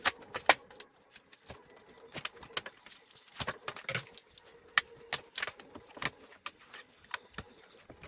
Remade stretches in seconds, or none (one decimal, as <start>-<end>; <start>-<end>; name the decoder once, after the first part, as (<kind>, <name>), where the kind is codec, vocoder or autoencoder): none